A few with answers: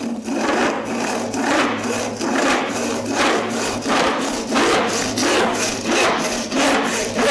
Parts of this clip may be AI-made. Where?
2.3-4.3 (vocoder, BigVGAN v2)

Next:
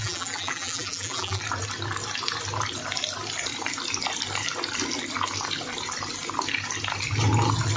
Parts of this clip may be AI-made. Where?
0.0-1.4 (vocoder, BigVGAN v2)

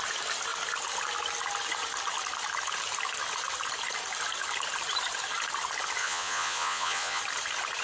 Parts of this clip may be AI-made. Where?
6.0-7.2 (vocoder, Vocos)

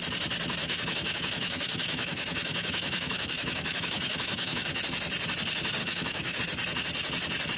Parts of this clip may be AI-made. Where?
0.6-4.8 (autoencoder, DAC-VAE); 5.8-6.4